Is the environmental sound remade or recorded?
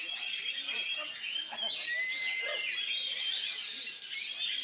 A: recorded